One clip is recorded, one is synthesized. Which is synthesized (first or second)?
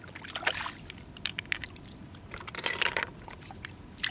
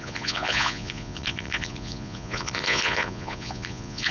second